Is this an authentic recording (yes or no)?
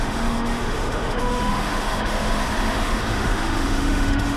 no